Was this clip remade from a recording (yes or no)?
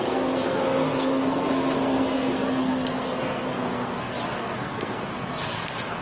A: yes